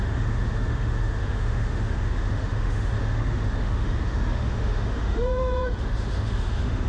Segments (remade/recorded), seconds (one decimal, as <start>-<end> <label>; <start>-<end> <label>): 0.0-6.9 remade